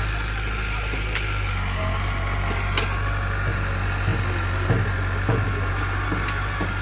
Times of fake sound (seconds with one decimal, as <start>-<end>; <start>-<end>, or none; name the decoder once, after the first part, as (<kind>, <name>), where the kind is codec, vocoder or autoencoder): none